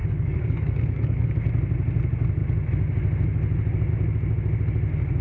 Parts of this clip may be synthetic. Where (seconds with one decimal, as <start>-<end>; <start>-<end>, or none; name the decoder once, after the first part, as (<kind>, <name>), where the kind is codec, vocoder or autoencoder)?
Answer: 0.0-1.3 (codec, DAC)